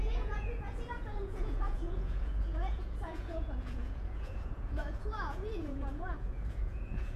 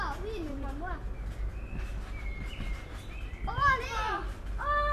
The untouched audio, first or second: second